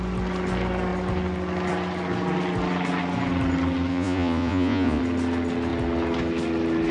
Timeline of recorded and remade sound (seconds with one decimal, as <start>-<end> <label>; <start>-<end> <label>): 0.0-3.9 recorded; 3.9-5.0 remade; 5.0-6.9 recorded